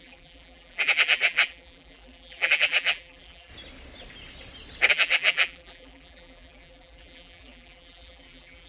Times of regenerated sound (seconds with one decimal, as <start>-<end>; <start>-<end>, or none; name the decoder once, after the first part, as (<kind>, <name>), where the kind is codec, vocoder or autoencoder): 0.0-3.5 (vocoder, BigVGAN v2); 4.9-8.7